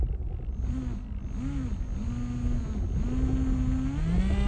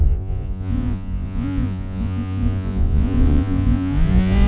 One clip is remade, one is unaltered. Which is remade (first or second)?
second